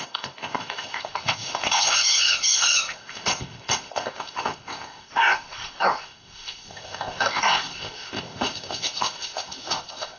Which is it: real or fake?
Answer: fake